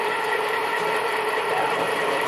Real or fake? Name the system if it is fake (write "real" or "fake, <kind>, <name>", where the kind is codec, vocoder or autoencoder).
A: fake, vocoder, BigVGAN v2